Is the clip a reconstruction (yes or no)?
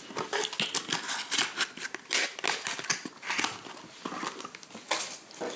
no